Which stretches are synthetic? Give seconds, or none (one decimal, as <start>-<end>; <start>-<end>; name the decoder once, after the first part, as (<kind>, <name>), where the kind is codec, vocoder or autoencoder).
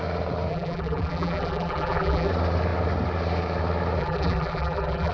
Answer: 0.5-2.3 (vocoder, BigVGAN v2); 4.0-5.1